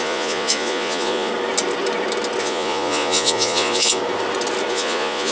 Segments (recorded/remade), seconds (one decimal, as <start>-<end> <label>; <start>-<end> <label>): 0.0-1.3 remade; 1.3-2.4 recorded; 2.4-4.0 remade; 4.0-4.7 recorded; 4.7-5.3 remade